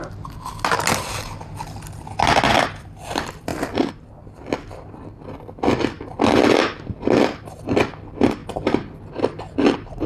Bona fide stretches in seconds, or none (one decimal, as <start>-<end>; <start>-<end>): 0.0-10.1

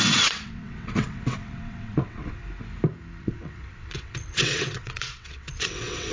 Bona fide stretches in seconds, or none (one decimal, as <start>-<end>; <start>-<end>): 2.4-3.2

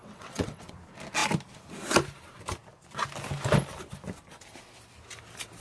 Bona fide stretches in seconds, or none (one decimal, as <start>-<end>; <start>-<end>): 0.7-5.6

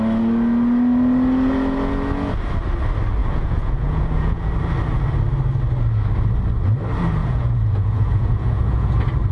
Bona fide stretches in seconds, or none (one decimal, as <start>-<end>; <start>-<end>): 0.0-3.2; 4.5-7.2; 8.9-9.3